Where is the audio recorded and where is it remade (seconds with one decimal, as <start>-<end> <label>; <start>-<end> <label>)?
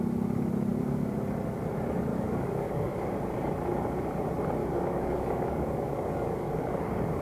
0.0-2.1 recorded; 2.1-3.1 remade; 3.1-4.6 recorded; 4.6-7.2 remade